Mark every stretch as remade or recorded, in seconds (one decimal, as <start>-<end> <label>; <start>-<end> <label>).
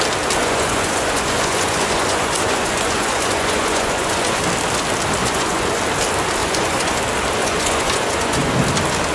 0.0-0.4 recorded; 0.4-4.4 remade; 4.4-5.2 recorded; 5.2-5.8 remade; 5.8-6.4 recorded; 6.4-7.0 remade; 7.0-7.4 recorded; 7.4-8.5 remade; 8.5-9.1 recorded